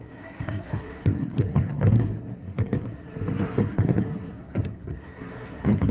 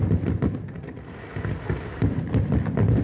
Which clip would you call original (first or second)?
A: second